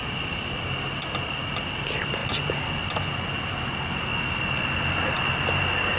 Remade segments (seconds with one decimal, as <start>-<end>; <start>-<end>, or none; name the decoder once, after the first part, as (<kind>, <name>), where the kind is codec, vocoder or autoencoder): none